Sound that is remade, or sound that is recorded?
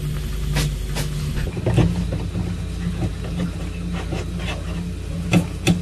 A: recorded